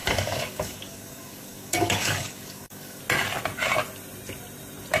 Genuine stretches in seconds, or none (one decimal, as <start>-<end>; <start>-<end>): 3.0-5.0